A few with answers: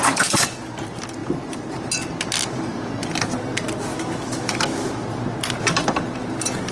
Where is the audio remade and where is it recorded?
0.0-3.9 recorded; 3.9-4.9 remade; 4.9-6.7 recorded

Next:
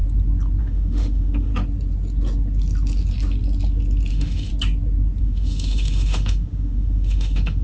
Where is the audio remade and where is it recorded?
0.0-0.6 recorded; 0.6-1.5 remade; 1.5-4.1 recorded; 4.1-4.5 remade; 4.5-5.2 recorded; 5.2-7.6 remade

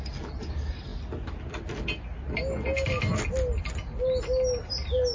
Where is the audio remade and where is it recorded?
0.0-5.1 recorded

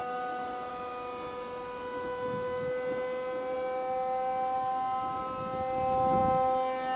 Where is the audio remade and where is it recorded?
0.0-0.7 remade; 0.7-7.0 recorded

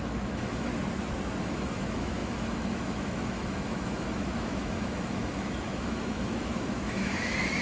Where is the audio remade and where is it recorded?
0.0-0.7 remade; 0.7-1.4 recorded; 1.4-7.6 remade

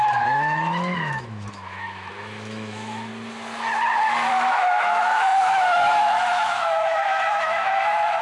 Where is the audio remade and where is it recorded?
0.0-3.1 remade; 3.1-4.3 recorded; 4.3-8.2 remade

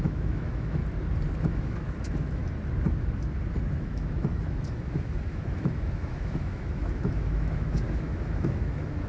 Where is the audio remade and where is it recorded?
0.0-0.8 remade; 0.8-1.4 recorded; 1.4-2.4 remade; 2.4-3.8 recorded; 3.8-9.1 remade